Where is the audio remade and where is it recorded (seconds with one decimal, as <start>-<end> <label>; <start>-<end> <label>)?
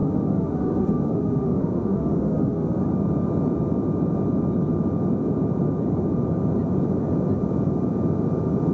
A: 0.0-2.8 remade; 2.8-8.7 recorded